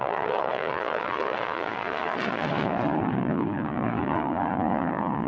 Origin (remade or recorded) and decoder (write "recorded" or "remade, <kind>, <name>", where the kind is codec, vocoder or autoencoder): remade, vocoder, Vocos